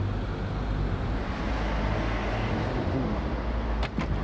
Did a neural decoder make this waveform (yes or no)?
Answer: no